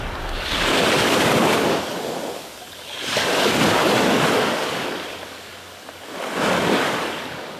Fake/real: fake